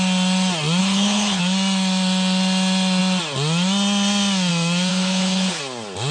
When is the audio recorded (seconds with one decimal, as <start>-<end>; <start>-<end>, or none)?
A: 0.0-0.8; 1.4-4.9; 5.6-6.1